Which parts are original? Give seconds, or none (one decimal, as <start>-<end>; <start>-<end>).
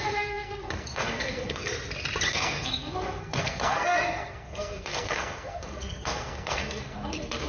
1.7-2.3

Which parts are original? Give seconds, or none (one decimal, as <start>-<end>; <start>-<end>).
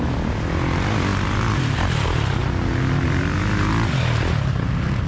0.0-5.1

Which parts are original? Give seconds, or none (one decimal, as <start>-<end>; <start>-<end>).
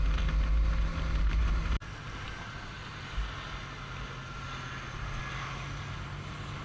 0.0-6.6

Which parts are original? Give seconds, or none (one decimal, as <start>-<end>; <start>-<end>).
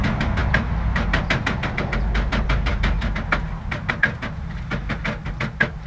0.0-5.9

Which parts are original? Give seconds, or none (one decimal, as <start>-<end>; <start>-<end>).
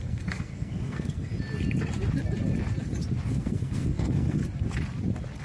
1.3-3.3; 4.4-5.4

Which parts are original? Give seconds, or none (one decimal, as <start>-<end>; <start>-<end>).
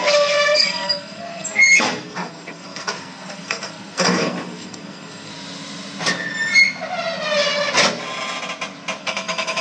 5.3-9.0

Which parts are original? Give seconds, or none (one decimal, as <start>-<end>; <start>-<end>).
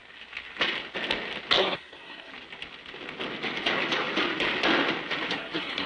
0.0-1.6; 2.3-5.3